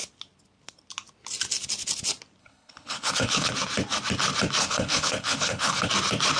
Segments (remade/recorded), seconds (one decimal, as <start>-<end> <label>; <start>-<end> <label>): 0.0-2.4 recorded; 2.4-3.5 remade; 3.5-4.6 recorded; 4.6-5.9 remade; 5.9-6.4 recorded